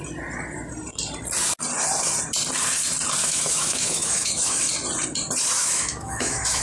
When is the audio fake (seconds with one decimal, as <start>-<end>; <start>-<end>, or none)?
3.2-4.7; 5.6-6.6